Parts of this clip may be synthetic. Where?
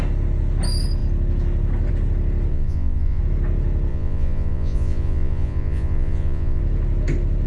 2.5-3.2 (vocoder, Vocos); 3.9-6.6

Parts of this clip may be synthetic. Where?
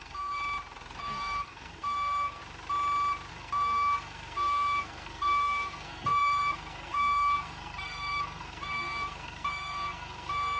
0.0-0.4 (codec, SNAC); 1.0-2.4; 3.3-10.6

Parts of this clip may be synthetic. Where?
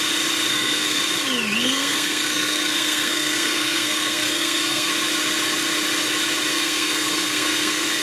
0.5-1.0 (codec, SNAC); 1.6-4.9; 6.5-8.0